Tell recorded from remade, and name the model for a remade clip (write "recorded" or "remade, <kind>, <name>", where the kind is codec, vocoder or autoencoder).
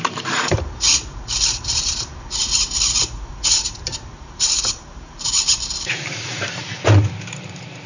remade, vocoder, BigVGAN v2